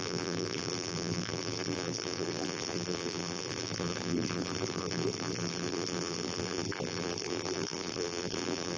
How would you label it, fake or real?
fake